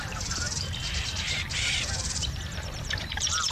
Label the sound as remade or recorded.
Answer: remade